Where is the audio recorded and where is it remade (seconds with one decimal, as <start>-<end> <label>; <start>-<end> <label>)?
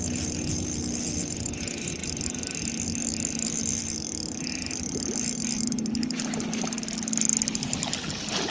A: 0.0-8.5 recorded